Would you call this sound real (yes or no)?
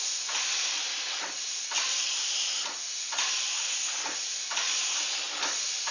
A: yes